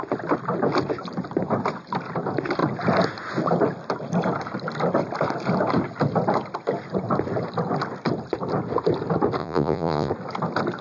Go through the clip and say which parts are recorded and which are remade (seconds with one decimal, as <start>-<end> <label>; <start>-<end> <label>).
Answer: 0.0-9.4 recorded; 9.4-10.1 remade; 10.1-10.8 recorded